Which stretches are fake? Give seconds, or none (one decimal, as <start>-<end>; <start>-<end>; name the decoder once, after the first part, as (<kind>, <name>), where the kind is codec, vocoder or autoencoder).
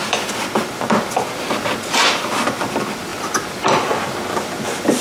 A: 0.0-5.0 (vocoder, BigVGAN v2)